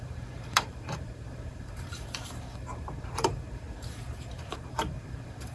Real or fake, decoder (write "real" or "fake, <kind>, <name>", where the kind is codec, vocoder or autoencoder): fake, vocoder, BigVGAN v2